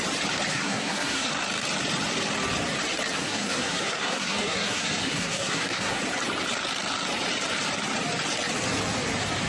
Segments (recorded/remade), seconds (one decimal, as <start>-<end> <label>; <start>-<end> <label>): 0.0-0.5 recorded; 0.5-1.3 remade; 1.3-3.2 recorded; 3.2-6.0 remade; 6.0-9.5 recorded